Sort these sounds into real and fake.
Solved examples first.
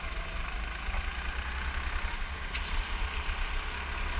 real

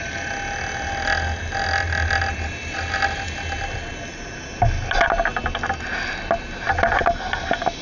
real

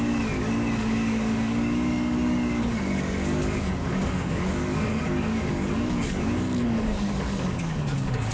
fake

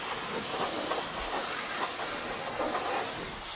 real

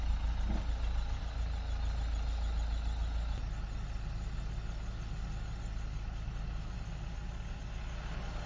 real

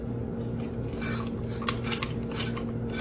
real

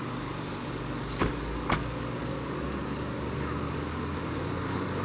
fake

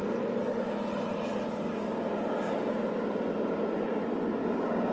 real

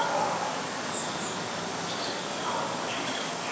fake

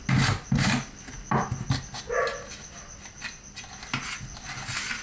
real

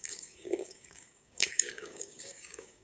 fake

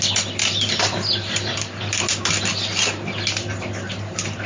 real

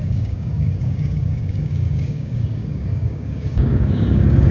fake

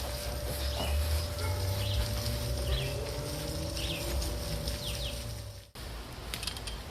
real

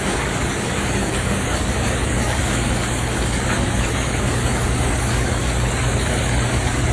fake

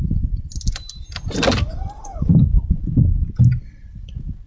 real